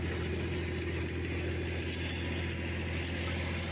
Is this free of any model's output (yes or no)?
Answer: yes